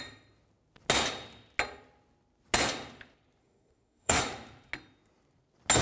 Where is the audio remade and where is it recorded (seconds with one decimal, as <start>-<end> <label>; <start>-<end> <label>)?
0.0-3.4 recorded; 3.4-4.2 remade; 4.2-5.8 recorded